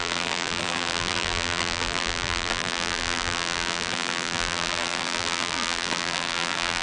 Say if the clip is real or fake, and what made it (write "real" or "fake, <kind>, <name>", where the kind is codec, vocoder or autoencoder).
fake, vocoder, BigVGAN v2